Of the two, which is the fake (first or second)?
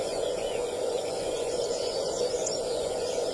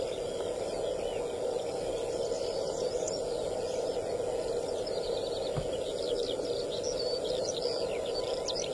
first